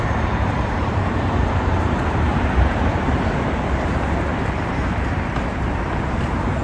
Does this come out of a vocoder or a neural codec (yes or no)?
yes